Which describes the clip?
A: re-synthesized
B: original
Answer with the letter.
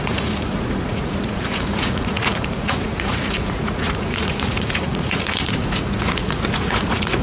A